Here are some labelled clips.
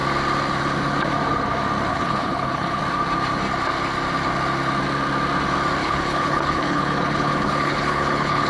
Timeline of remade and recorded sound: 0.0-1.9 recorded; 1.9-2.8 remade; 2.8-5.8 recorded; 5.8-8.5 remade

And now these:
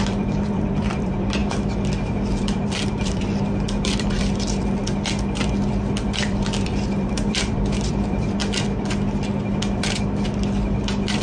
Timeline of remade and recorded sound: 0.0-1.4 remade; 1.4-2.3 recorded; 2.3-4.8 remade; 4.8-5.7 recorded; 5.7-8.4 remade; 8.4-10.0 recorded; 10.0-11.2 remade

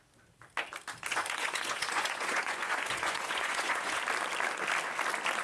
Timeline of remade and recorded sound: 0.0-1.1 recorded; 1.1-4.0 remade; 4.0-5.4 recorded

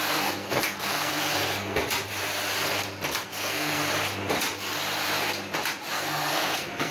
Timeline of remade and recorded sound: 0.0-1.8 remade; 1.8-3.1 recorded; 3.1-3.8 remade; 3.8-5.9 recorded; 5.9-6.9 remade

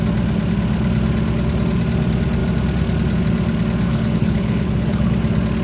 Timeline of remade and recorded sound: 0.0-3.9 recorded; 3.9-5.1 remade; 5.1-5.6 recorded

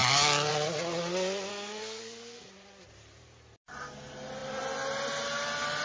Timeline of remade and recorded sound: 0.0-1.5 recorded; 1.5-2.5 remade; 2.5-5.8 recorded

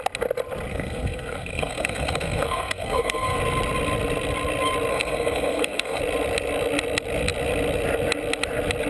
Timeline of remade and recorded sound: 0.0-0.7 recorded; 0.7-3.4 remade; 3.4-4.9 recorded; 4.9-6.0 remade; 6.0-8.9 recorded

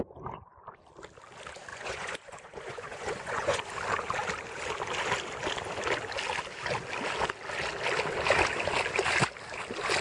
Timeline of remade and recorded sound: 0.0-1.7 recorded; 1.7-3.6 remade; 3.6-10.0 recorded